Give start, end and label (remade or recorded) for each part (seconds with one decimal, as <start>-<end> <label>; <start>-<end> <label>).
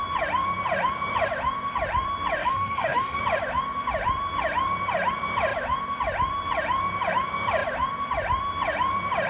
0.0-2.4 recorded; 2.4-3.2 remade; 3.2-9.3 recorded